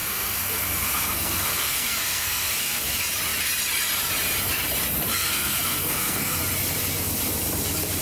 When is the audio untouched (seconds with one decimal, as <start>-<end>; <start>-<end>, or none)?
2.9-5.1; 6.4-8.0